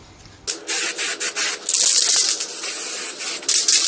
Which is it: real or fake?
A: real